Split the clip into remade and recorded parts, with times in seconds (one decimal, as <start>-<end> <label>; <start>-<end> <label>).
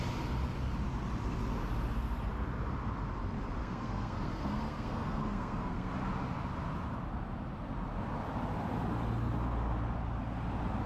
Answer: 0.0-3.6 recorded; 3.6-5.9 remade; 5.9-10.9 recorded